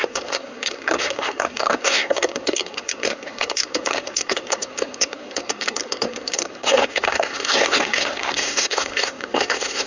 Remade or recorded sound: remade